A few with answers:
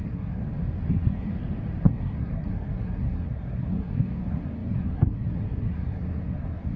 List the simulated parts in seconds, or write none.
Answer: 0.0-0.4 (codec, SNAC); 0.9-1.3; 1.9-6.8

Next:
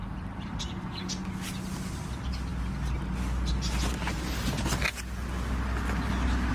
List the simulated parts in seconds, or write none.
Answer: 0.0-0.6 (vocoder, BigVGAN v2)

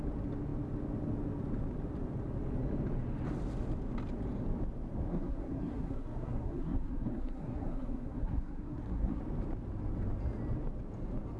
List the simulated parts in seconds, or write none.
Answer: 5.1-9.2 (codec, SNAC)

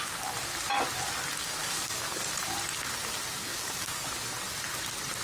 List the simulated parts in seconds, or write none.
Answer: 1.6-2.2 (codec, DAC); 3.5-4.1

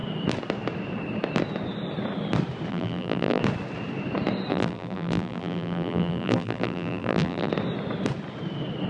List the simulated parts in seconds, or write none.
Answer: 2.7-3.4 (vocoder, BigVGAN v2); 4.5-7.5